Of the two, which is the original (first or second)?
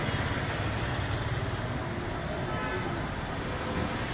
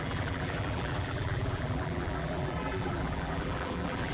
first